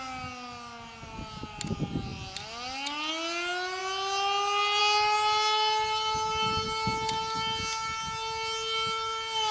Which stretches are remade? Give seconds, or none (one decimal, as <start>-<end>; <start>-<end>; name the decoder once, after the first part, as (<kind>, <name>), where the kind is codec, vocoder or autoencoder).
none